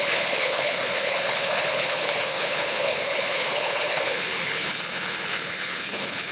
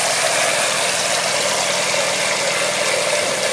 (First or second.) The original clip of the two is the second